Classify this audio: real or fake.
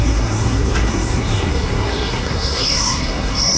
fake